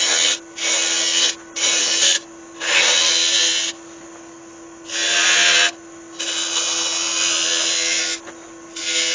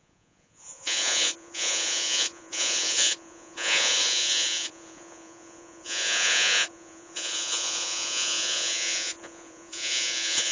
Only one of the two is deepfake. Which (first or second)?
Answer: second